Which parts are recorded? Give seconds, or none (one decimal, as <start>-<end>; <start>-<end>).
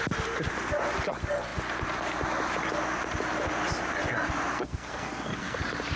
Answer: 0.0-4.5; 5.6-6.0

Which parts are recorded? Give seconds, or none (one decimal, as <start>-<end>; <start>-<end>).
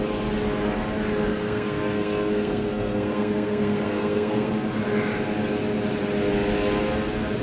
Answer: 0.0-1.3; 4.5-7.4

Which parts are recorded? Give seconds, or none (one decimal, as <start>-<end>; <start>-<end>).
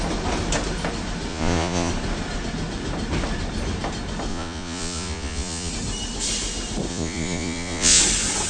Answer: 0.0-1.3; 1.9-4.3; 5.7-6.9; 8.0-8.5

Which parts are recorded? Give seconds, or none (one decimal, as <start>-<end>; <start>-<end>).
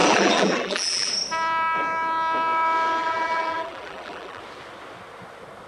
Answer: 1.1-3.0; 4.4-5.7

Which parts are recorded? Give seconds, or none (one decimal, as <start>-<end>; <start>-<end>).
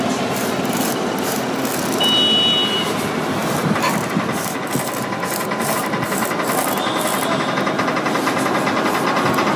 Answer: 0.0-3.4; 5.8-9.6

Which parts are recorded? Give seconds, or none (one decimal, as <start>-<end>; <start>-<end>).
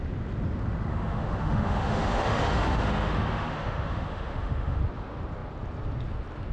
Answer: 0.0-0.9; 4.8-6.5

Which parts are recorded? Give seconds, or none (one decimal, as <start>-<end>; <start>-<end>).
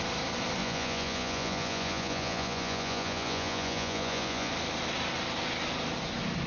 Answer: 0.0-0.6; 4.5-6.5